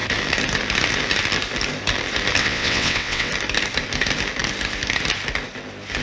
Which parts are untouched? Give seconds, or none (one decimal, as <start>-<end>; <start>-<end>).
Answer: 0.0-2.4; 3.3-6.0